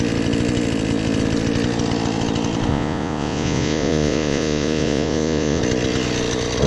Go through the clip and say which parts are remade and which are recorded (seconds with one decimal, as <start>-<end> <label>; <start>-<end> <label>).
0.0-2.7 recorded; 2.7-5.6 remade; 5.6-6.7 recorded